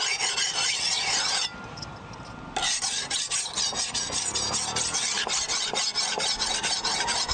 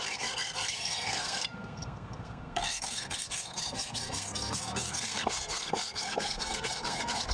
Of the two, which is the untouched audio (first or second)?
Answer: first